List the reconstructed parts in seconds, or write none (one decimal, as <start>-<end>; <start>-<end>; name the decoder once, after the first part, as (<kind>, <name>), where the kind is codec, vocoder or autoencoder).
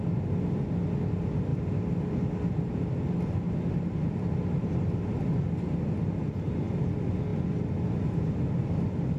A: none